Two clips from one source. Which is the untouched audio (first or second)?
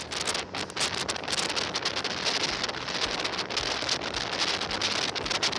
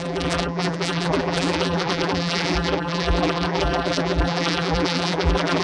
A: first